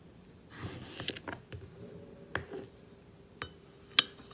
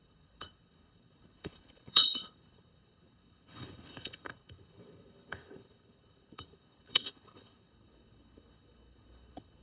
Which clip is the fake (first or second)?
second